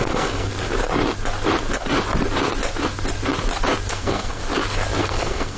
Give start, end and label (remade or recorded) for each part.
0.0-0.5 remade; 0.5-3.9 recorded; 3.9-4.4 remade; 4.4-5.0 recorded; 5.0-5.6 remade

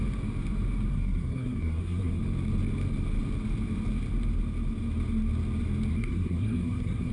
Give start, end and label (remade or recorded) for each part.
0.0-0.9 recorded; 0.9-2.2 remade; 2.2-5.9 recorded; 5.9-7.1 remade